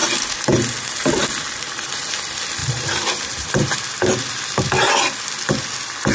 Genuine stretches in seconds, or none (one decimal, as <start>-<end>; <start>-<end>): 0.0-2.6; 3.8-6.1